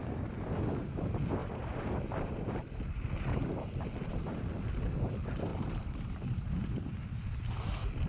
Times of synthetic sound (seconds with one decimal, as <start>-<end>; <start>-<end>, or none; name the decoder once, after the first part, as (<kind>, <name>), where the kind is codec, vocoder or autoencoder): 1.4-2.7 (vocoder, BigVGAN v2); 5.5-6.9